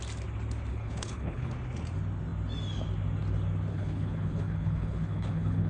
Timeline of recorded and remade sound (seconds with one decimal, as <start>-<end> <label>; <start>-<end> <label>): 0.0-0.7 recorded; 0.7-1.5 remade; 1.5-3.7 recorded; 3.7-5.7 remade